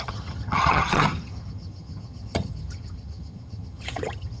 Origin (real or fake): fake